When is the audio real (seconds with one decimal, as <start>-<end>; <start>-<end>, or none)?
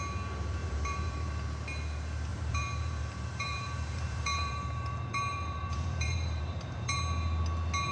0.0-0.6; 1.3-2.3; 7.0-7.9